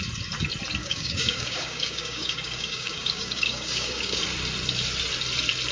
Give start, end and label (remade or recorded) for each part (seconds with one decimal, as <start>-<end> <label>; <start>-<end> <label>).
0.0-0.8 recorded; 0.8-4.2 remade; 4.2-5.7 recorded